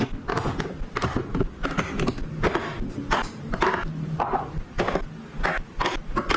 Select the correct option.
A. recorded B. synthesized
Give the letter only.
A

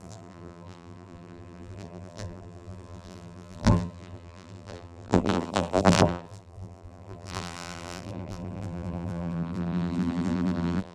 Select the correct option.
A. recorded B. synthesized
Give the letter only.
B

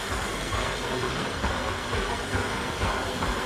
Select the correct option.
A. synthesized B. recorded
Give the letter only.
A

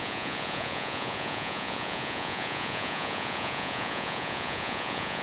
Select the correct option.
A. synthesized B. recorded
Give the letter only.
A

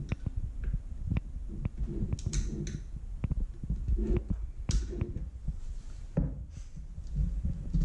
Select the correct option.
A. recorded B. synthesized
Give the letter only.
A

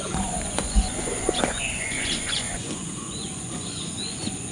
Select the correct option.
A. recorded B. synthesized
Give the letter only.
B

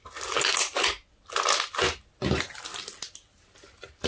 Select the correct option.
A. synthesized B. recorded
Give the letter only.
B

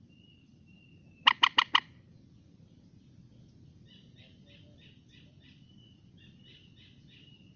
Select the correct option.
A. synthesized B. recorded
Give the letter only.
B